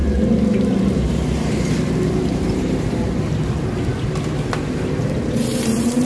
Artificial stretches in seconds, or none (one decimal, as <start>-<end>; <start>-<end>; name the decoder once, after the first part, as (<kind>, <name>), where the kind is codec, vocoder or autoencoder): 0.8-3.9 (vocoder, BigVGAN v2); 5.0-6.1